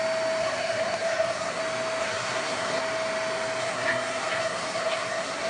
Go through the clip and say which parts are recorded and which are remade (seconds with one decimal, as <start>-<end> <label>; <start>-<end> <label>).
0.0-0.4 recorded; 0.4-1.6 remade; 1.6-2.0 recorded; 2.0-2.8 remade; 2.8-3.6 recorded; 3.6-5.5 remade